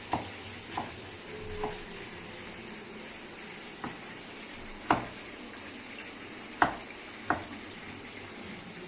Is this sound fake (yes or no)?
no